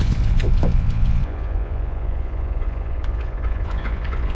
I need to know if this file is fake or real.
fake